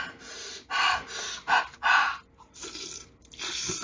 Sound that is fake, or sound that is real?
real